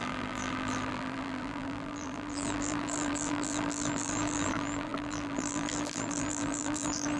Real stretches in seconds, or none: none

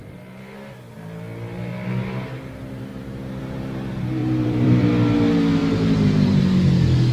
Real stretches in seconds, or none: 0.0-2.9; 3.4-4.2; 4.9-5.6; 6.4-7.1